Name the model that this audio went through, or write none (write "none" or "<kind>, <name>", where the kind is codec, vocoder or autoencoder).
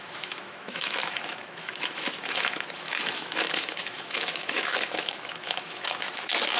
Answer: autoencoder, DAC-VAE